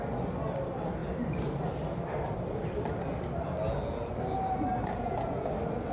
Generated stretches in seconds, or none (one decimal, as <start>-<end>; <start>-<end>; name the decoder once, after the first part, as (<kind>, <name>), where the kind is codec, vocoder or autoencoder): 4.9-5.5 (vocoder, Vocos)